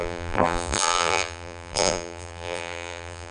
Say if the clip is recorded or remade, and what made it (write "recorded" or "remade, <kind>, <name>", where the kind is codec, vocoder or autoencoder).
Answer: remade, vocoder, BigVGAN v2